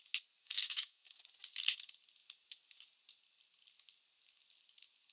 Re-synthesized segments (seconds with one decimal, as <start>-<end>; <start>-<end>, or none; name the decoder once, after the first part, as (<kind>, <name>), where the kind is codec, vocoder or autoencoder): 0.4-1.2 (autoencoder, DAC-VAE)